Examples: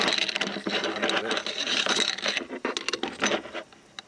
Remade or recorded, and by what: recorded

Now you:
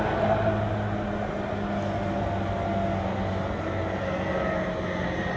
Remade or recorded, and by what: recorded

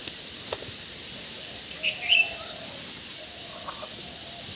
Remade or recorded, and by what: recorded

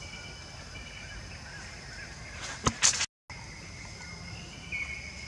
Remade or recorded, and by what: recorded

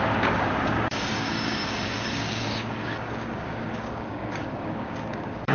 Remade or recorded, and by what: remade, codec, DAC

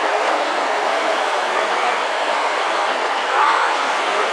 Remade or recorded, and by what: remade, codec, SNAC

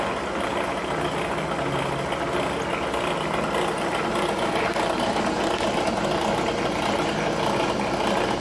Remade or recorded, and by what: recorded